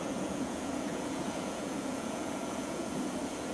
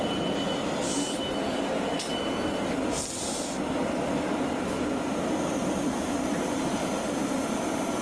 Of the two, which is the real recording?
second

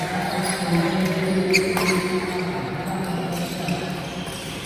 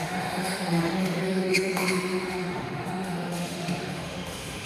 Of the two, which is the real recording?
first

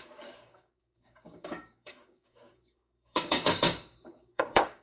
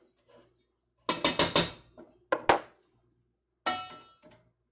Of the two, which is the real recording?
second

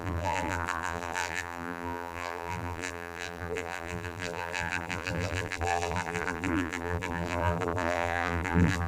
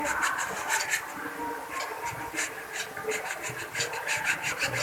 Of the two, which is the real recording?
second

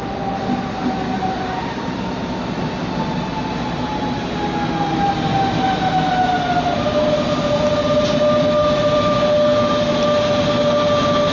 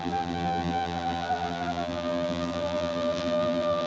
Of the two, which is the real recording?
first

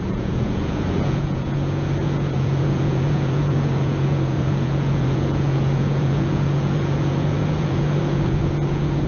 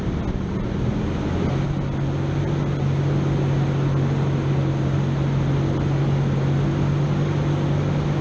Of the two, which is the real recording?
second